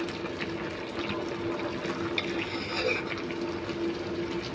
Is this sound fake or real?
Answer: real